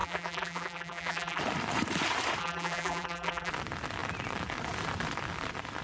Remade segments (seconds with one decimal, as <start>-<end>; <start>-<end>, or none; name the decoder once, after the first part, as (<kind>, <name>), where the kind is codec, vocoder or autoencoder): 0.0-1.4 (vocoder, BigVGAN v2); 2.4-3.5